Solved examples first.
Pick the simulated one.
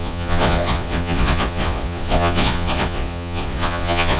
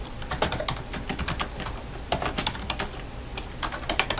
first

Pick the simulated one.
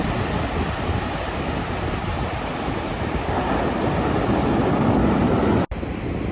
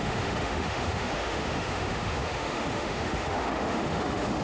second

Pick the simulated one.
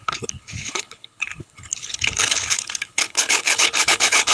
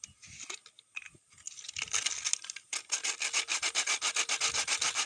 first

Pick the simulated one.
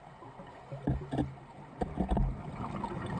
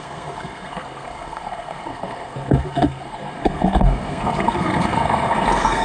second